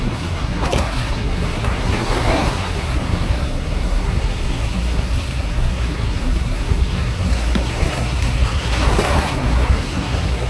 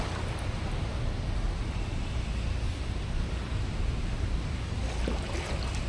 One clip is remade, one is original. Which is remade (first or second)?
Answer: first